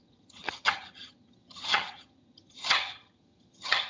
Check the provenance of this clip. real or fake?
fake